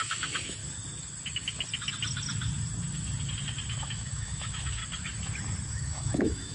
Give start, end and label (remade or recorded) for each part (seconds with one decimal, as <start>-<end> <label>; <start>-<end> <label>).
0.0-0.6 remade; 0.6-3.8 recorded; 3.8-4.8 remade; 4.8-5.7 recorded; 5.7-6.5 remade